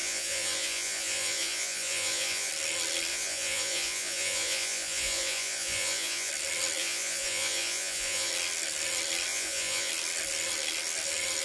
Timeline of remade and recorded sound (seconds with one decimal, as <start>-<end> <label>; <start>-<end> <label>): 0.0-2.5 remade; 2.5-3.1 recorded; 3.1-6.3 remade; 6.3-6.8 recorded; 6.8-8.3 remade; 8.3-9.3 recorded; 9.3-9.9 remade; 9.9-11.4 recorded